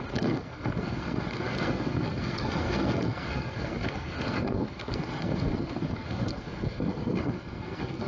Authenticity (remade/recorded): remade